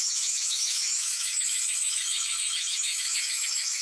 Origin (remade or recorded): remade